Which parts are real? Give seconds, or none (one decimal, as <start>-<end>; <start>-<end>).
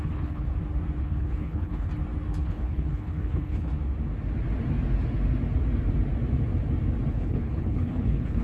0.5-1.0; 1.9-2.4; 3.7-7.1